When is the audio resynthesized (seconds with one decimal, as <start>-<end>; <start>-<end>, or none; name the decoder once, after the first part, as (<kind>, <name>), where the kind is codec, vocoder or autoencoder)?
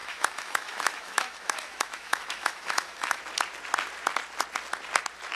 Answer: 0.0-3.2 (autoencoder, DAC-VAE)